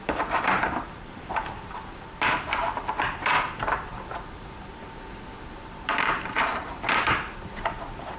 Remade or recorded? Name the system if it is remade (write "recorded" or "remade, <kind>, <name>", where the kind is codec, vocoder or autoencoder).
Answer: remade, vocoder, BigVGAN v2